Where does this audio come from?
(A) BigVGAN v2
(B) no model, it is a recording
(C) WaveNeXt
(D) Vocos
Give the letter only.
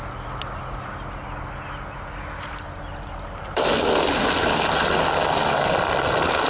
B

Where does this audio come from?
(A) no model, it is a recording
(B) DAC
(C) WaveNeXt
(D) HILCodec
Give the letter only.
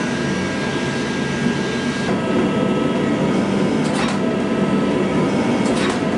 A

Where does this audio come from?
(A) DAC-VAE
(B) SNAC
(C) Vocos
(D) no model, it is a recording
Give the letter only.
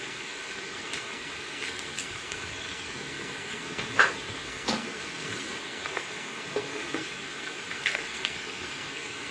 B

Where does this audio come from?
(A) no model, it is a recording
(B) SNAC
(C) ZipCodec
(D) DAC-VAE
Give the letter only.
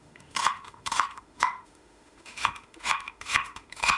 D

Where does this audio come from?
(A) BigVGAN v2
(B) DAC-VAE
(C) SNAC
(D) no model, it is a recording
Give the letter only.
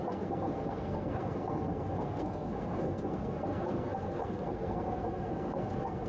C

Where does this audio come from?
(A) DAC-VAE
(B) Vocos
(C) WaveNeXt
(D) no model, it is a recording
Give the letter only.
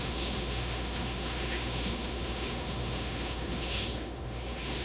A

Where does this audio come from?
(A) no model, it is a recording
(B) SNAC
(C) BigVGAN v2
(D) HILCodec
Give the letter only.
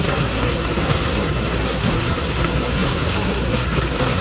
B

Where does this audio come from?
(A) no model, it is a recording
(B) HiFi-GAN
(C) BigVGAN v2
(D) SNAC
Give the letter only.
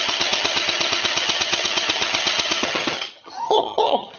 B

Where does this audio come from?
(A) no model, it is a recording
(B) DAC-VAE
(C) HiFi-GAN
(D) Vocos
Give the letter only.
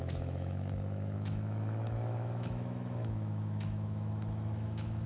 B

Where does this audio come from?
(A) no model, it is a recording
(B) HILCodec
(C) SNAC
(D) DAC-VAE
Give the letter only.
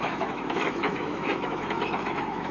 D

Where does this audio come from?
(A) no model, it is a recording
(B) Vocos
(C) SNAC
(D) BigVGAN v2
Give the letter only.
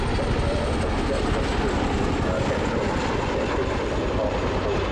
A